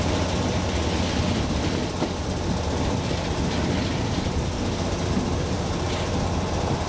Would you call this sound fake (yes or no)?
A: no